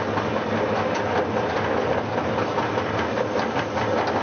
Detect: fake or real real